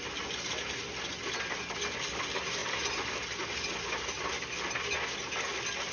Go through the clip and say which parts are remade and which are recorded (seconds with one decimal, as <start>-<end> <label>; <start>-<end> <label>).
0.0-5.9 recorded